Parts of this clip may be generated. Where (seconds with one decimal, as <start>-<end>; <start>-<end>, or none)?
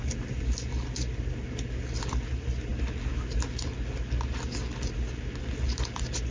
none